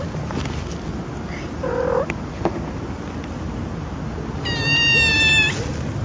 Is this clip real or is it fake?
real